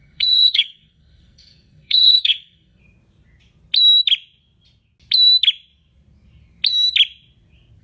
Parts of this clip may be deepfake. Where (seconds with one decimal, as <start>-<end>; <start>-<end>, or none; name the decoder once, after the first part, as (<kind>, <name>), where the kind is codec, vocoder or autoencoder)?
0.0-2.8 (codec, SNAC)